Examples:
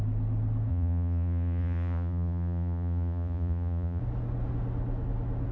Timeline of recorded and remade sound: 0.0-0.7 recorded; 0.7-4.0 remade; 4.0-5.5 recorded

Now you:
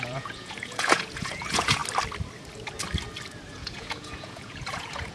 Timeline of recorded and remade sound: 0.0-1.8 remade; 1.8-3.5 recorded; 3.5-5.1 remade

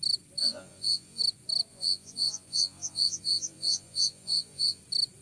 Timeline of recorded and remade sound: 0.0-0.4 recorded; 0.4-1.2 remade; 1.2-1.7 recorded; 1.7-4.8 remade; 4.8-5.2 recorded

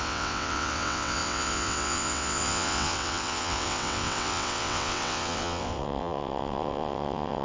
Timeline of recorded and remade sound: 0.0-7.4 remade